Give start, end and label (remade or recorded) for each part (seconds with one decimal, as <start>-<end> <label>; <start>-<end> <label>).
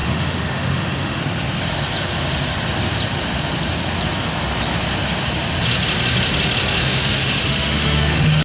0.0-1.2 remade; 1.2-6.8 recorded; 6.8-8.4 remade